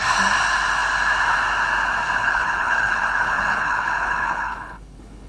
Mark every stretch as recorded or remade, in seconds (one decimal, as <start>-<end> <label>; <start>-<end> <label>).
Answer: 0.0-2.2 recorded; 2.2-5.3 remade